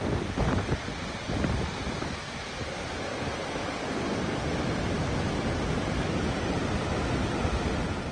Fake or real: real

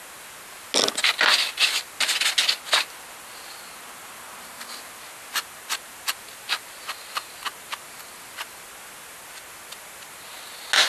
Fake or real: real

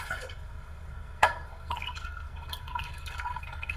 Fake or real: fake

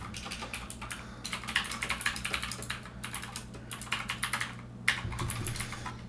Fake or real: real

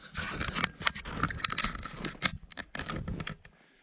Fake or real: real